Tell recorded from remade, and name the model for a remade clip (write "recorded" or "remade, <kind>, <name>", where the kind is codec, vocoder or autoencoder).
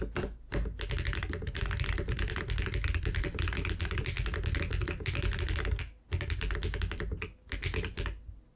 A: recorded